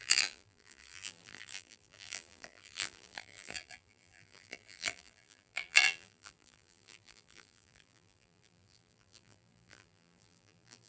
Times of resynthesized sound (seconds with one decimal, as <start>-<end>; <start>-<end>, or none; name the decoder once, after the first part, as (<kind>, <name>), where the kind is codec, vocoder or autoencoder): 0.0-10.9 (vocoder, BigVGAN v2)